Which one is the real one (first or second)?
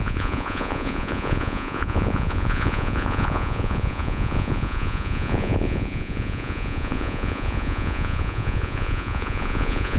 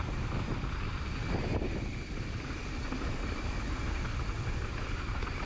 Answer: second